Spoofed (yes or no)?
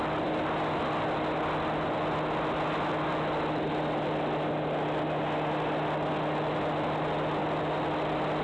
no